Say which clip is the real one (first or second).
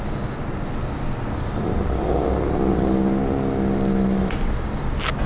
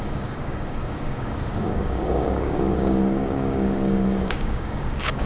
first